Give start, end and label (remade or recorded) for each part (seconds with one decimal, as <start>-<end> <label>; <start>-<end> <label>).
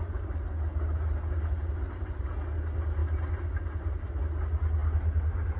0.0-5.6 recorded